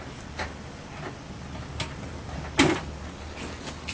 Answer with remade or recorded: recorded